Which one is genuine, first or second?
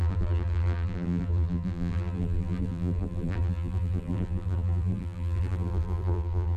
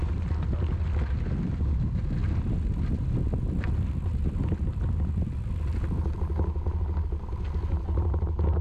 second